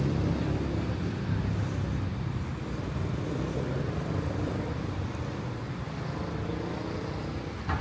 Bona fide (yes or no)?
yes